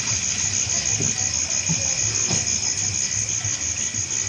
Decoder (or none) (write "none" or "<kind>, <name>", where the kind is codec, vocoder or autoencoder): none